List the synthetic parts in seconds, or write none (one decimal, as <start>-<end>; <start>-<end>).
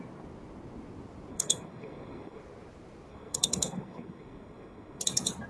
1.3-2.4; 3.1-5.0